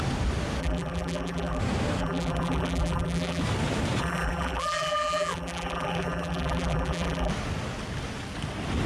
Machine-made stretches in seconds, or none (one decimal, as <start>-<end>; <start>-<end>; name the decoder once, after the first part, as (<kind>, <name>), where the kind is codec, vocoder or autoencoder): 0.6-1.6 (vocoder, BigVGAN v2); 2.0-3.4; 4.0-7.3